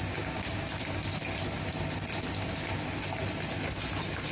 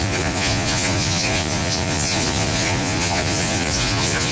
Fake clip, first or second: second